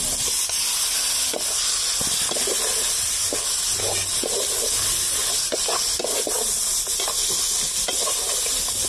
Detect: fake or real real